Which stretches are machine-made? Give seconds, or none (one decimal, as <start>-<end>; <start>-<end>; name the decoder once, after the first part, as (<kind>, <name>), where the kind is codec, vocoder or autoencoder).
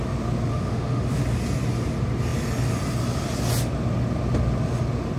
0.5-1.2 (autoencoder, DAC-VAE)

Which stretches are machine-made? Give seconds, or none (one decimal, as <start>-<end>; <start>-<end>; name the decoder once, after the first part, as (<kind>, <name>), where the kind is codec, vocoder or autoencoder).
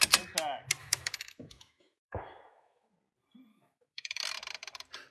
0.8-2.9 (autoencoder, DAC-VAE); 3.5-4.2